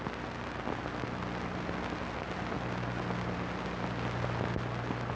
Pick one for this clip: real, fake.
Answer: real